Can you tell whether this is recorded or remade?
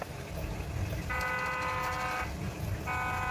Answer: recorded